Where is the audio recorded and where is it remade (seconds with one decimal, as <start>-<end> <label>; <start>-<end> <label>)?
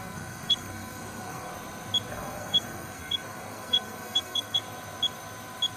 0.0-1.5 remade; 1.5-2.1 recorded; 2.1-4.6 remade; 4.6-5.8 recorded